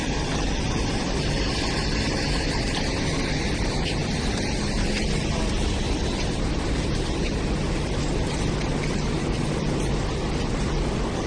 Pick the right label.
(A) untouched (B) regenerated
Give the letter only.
A